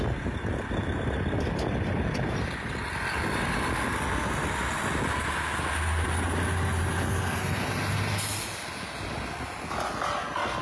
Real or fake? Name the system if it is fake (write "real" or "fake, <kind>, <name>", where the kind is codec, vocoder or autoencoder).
real